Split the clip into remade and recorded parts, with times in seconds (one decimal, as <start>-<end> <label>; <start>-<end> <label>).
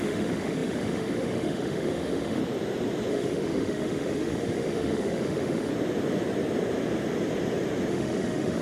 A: 0.0-2.4 remade; 2.4-3.1 recorded; 3.1-5.7 remade; 5.7-7.9 recorded; 7.9-8.6 remade